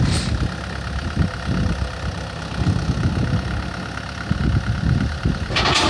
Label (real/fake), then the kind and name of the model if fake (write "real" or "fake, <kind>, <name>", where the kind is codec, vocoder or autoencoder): real